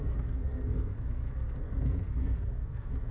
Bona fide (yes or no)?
no